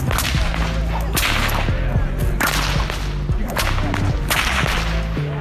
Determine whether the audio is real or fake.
real